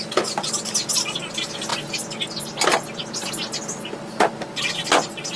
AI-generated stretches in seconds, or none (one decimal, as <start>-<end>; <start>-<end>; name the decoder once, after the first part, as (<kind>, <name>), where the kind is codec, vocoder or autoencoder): none